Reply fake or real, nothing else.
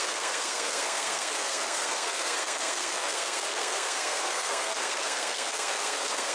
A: fake